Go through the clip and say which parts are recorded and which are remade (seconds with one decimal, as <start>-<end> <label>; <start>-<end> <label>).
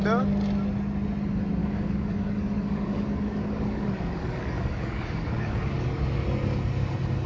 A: 0.0-1.6 recorded; 1.6-6.0 remade; 6.0-7.3 recorded